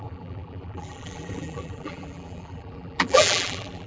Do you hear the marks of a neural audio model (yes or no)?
yes